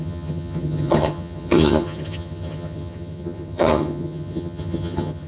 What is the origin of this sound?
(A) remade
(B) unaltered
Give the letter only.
A